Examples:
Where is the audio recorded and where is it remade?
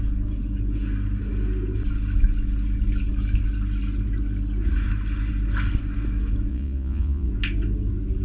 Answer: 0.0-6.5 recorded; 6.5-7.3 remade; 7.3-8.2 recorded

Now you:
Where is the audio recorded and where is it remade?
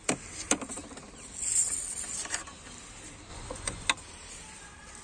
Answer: 0.0-3.3 recorded; 3.3-3.9 remade; 3.9-5.0 recorded